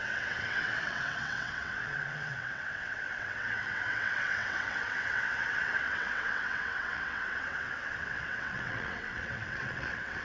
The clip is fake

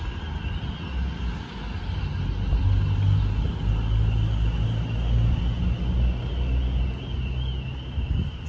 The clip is real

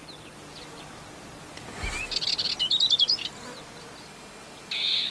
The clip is real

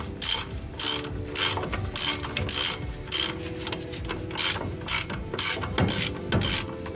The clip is real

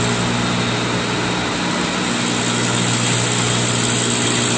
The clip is real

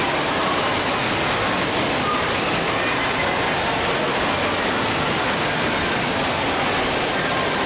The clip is real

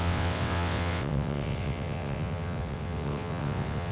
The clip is fake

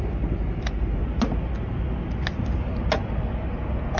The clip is real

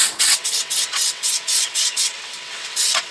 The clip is fake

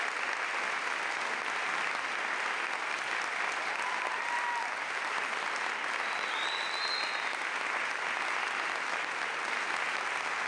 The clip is real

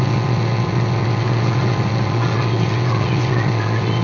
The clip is fake